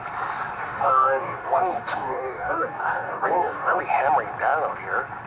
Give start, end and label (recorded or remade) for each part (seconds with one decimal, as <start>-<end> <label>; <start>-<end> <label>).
0.0-0.6 recorded; 0.6-3.8 remade; 3.8-5.3 recorded